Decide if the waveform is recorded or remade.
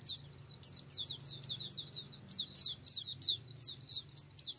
recorded